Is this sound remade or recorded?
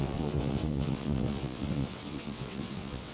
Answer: remade